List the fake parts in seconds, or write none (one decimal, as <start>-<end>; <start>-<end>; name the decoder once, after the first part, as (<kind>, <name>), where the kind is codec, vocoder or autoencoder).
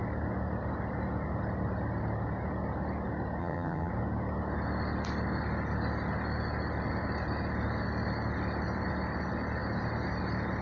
3.4-3.9 (vocoder, HiFi-GAN)